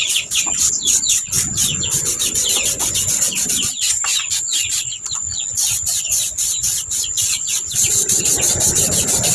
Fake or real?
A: fake